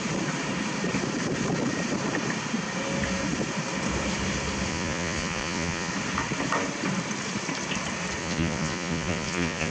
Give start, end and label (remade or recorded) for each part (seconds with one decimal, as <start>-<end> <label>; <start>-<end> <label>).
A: 0.0-4.7 recorded; 4.7-5.9 remade; 5.9-8.2 recorded; 8.2-9.7 remade